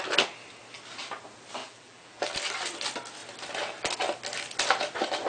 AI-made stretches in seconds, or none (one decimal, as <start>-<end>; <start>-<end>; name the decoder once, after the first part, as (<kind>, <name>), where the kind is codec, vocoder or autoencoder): 1.6-2.2 (vocoder, BigVGAN v2)